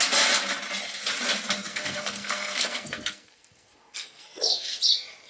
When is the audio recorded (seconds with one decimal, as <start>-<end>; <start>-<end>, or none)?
0.0-1.6; 4.8-5.3